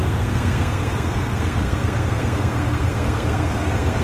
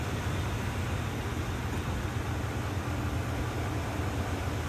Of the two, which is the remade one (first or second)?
first